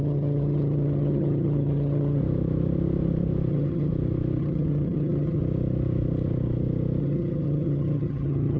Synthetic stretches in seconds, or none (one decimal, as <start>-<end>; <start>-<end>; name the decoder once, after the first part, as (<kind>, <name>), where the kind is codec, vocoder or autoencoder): 0.0-2.2 (vocoder, HiFi-GAN); 3.5-3.9; 4.4-5.4; 7.0-8.6